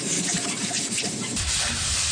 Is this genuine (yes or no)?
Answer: no